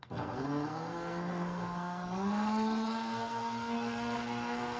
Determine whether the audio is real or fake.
fake